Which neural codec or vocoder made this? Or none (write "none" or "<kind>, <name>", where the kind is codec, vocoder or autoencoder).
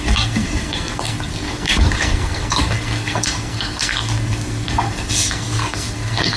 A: codec, SNAC